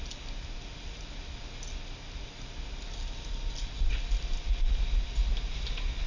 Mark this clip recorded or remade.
recorded